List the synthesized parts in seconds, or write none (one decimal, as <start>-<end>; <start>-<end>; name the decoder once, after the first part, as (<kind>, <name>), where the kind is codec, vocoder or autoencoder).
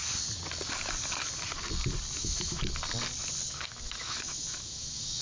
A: 2.1-2.6 (autoencoder, DAC-VAE); 3.5-5.2